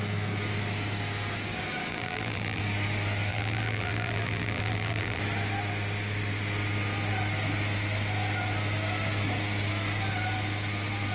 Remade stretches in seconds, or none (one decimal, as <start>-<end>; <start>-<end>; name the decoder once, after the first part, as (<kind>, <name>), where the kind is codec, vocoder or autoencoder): 1.9-2.6 (vocoder, BigVGAN v2); 3.3-5.2